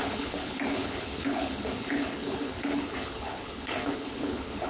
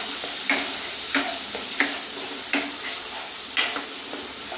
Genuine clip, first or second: second